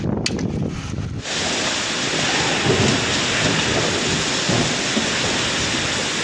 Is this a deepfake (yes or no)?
no